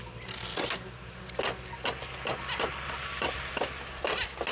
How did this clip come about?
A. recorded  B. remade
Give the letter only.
A